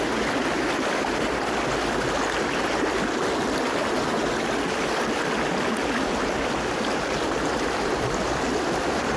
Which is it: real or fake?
real